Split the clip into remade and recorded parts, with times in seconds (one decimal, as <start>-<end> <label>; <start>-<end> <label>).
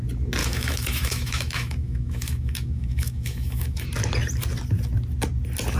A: 0.0-0.4 recorded; 0.4-3.9 remade; 3.9-5.8 recorded